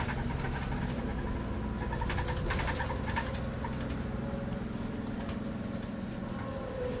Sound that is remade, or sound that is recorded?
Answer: recorded